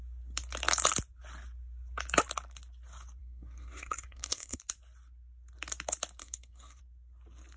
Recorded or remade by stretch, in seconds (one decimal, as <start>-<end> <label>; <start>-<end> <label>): 0.0-3.2 recorded; 3.2-4.6 remade; 4.6-6.2 recorded; 6.2-6.8 remade; 6.8-7.6 recorded